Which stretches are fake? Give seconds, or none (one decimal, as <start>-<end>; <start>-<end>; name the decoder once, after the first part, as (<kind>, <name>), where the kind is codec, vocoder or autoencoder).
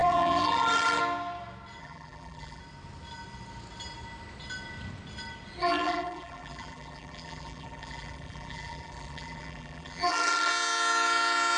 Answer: 0.0-1.0 (vocoder, BigVGAN v2); 1.8-2.6; 5.6-10.5